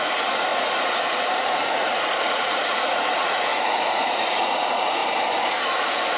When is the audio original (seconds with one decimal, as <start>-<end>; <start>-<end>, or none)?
5.0-5.8